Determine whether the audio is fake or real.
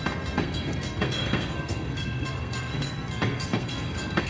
fake